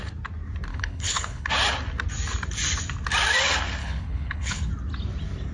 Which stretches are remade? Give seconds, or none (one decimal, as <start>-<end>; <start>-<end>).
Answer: 0.7-1.5; 3.8-4.7